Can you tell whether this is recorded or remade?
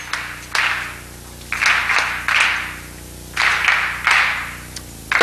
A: recorded